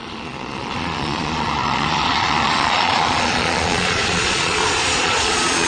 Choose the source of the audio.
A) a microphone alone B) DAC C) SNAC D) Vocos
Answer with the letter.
D